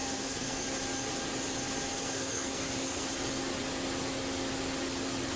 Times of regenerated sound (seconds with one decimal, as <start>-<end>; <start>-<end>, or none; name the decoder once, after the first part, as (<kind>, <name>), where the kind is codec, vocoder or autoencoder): 0.0-0.6 (codec, SNAC); 1.9-3.1